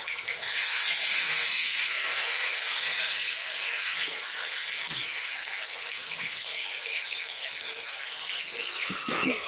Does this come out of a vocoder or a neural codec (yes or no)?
yes